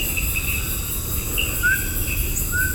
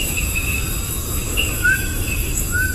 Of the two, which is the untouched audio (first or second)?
first